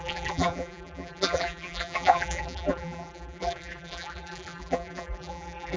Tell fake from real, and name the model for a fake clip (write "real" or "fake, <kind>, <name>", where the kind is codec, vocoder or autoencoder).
fake, vocoder, BigVGAN v2